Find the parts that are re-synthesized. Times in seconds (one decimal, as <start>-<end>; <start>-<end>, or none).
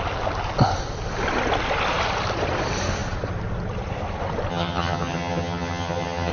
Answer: 4.5-6.3